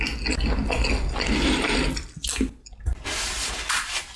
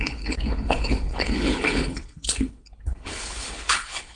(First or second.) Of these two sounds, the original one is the first